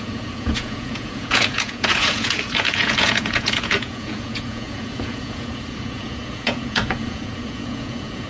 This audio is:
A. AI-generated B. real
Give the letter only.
A